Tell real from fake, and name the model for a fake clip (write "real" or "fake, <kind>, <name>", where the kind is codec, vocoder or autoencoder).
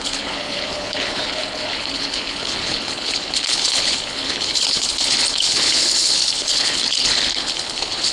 fake, codec, HILCodec